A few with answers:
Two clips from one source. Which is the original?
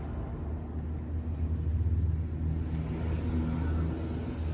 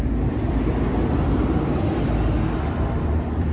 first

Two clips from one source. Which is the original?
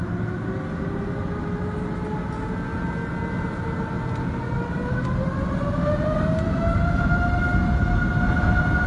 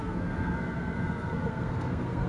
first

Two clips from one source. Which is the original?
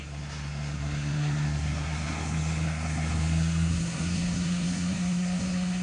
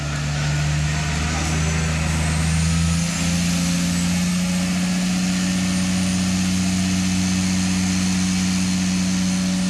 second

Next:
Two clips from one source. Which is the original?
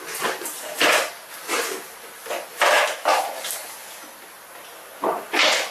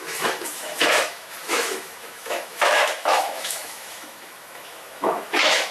first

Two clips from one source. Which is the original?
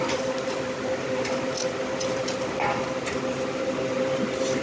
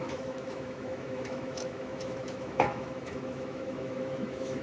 first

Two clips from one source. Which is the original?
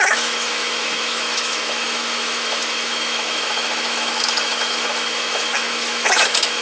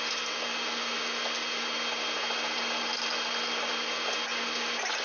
second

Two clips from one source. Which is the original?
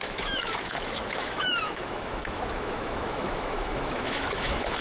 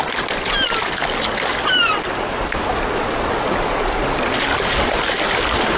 second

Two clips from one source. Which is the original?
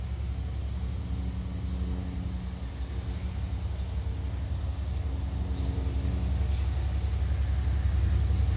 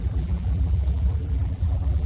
first